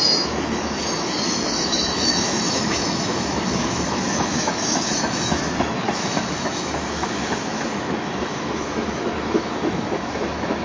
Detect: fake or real fake